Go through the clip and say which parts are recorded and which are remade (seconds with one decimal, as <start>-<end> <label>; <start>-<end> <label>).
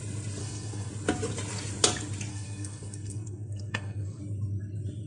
0.0-0.4 recorded; 0.4-0.9 remade; 0.9-2.3 recorded; 2.3-4.2 remade; 4.2-5.1 recorded